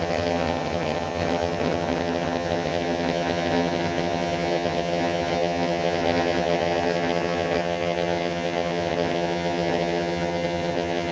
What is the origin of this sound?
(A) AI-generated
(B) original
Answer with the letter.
A